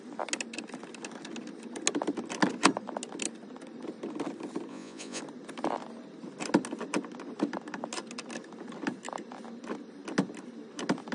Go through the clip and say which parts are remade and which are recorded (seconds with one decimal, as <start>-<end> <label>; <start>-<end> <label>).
0.0-4.7 recorded; 4.7-5.2 remade; 5.2-11.1 recorded